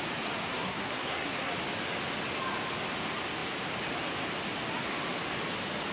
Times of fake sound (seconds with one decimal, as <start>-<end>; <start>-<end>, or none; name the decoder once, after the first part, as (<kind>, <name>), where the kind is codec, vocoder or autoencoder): 0.5-1.5 (codec, SNAC)